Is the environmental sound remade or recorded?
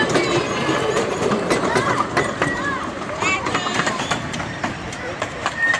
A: remade